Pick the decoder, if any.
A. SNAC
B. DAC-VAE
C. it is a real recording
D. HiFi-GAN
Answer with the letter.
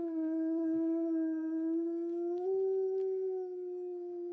C